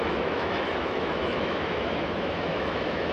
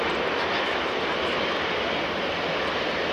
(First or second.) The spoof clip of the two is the first